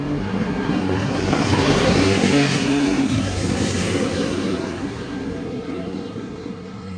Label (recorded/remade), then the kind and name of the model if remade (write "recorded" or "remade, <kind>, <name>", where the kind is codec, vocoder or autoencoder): remade, codec, SNAC